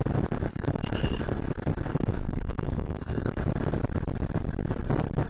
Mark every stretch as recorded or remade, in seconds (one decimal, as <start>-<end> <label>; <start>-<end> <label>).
0.0-0.5 recorded; 0.5-1.2 remade; 1.2-1.9 recorded; 1.9-3.4 remade; 3.4-5.3 recorded